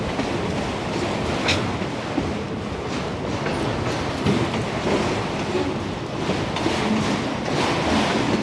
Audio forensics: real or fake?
real